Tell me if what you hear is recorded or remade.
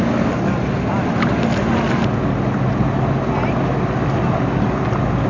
recorded